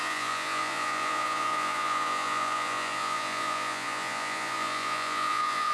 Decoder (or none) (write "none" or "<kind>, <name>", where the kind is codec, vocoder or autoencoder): vocoder, Vocos